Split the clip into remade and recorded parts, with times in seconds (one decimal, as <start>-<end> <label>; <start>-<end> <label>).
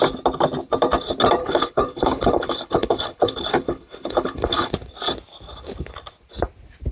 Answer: 0.0-1.4 recorded; 1.4-4.7 remade; 4.7-6.9 recorded